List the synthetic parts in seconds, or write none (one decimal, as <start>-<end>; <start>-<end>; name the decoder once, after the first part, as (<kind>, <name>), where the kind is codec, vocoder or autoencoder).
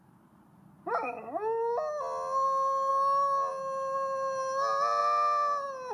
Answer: none